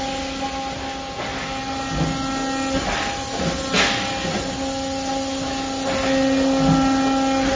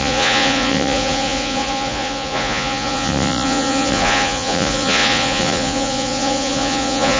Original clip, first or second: first